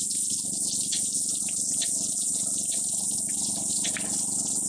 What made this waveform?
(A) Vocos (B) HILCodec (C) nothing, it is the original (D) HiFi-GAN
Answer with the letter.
C